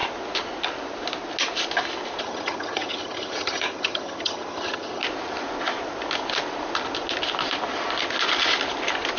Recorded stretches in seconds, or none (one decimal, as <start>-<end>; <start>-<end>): 0.0-2.2; 5.0-9.2